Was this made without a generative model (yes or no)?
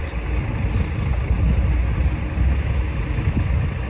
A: yes